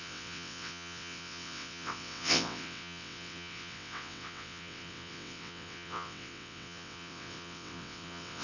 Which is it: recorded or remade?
remade